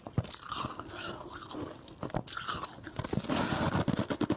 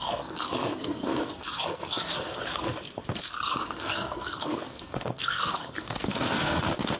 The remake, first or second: second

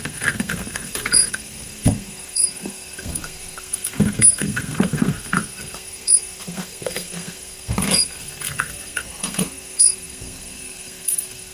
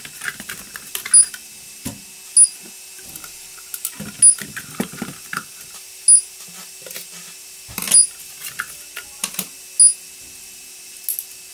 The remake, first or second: first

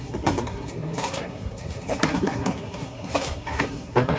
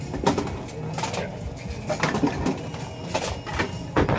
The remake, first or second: first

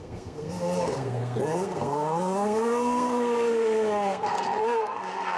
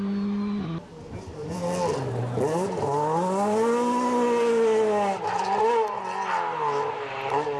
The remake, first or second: first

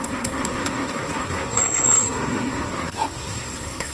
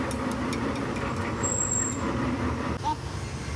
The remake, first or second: first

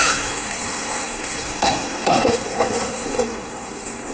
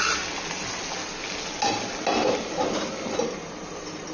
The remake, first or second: first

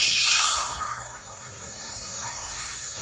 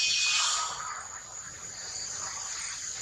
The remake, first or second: first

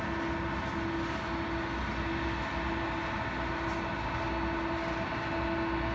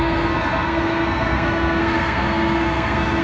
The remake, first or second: second